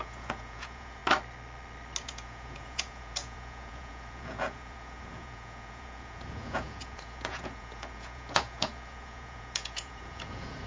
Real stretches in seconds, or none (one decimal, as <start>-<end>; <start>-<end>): 1.0-2.0